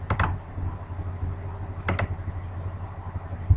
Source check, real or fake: real